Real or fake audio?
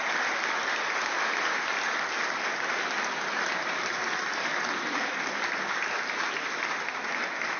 real